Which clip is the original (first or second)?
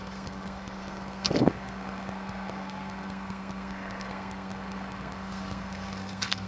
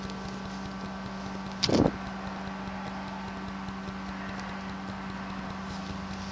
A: second